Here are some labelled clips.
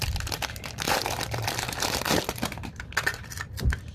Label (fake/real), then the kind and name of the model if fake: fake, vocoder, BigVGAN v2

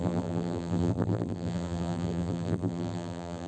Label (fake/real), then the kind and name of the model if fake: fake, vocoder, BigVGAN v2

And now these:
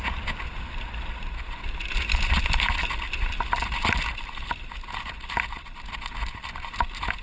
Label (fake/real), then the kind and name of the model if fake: real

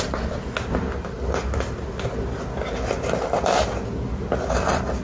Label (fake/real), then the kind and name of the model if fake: real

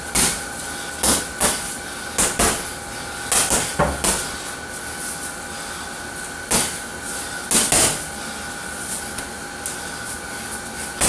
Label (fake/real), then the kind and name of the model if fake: real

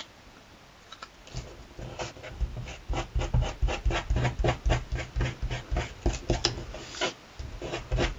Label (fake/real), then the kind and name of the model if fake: real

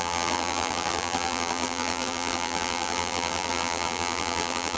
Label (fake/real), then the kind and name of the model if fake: fake, vocoder, BigVGAN v2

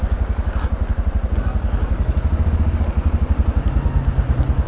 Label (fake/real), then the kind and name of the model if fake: real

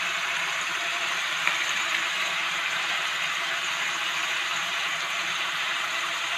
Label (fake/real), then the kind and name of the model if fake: fake, vocoder, BigVGAN v2